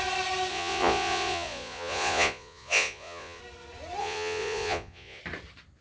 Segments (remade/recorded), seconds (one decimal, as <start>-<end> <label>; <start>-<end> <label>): 0.0-0.5 recorded; 0.5-3.4 remade; 3.4-4.0 recorded; 4.0-5.2 remade; 5.2-5.8 recorded